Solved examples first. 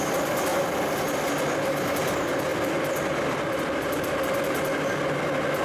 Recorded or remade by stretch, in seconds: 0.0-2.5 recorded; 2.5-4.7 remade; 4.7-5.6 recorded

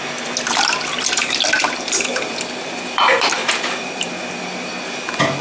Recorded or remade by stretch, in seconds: 0.0-2.1 recorded; 2.1-4.7 remade; 4.7-5.4 recorded

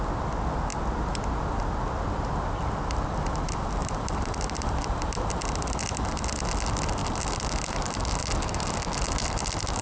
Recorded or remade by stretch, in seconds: 0.0-3.8 recorded; 3.8-4.8 remade; 4.8-9.8 recorded

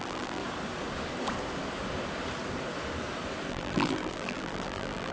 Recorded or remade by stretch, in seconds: 0.0-0.4 remade; 0.4-3.5 recorded; 3.5-5.1 remade

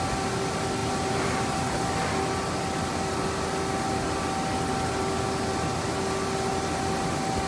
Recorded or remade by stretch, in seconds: 0.0-0.8 recorded; 0.8-2.0 remade; 2.0-7.5 recorded